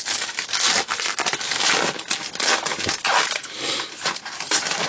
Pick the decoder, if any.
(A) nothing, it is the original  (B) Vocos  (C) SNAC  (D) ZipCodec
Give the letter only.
A